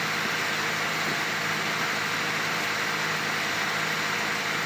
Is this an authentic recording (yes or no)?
yes